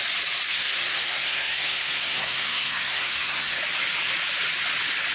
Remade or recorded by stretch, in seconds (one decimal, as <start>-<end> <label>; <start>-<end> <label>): 0.0-0.5 recorded; 0.5-3.6 remade; 3.6-5.1 recorded